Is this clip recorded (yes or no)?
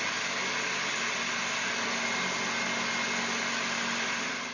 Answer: yes